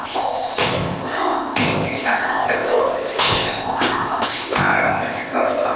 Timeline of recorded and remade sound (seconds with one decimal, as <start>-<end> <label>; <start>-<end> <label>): 0.0-5.8 remade